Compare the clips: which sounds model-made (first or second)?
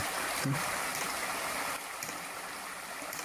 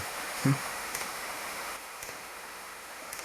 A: second